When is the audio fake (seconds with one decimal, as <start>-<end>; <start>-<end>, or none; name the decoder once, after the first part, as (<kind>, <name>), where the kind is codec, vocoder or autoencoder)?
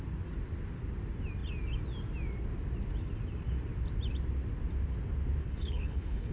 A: 5.4-6.3 (codec, HILCodec)